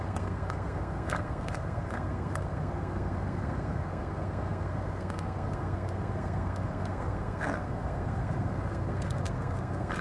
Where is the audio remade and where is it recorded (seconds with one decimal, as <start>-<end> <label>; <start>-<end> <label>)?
0.0-10.0 remade